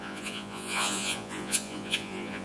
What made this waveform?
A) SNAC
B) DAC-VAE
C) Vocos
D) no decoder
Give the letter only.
C